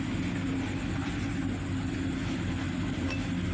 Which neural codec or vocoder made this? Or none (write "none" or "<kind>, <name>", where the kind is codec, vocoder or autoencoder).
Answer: none